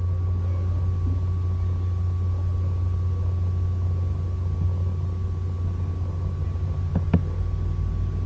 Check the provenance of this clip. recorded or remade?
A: recorded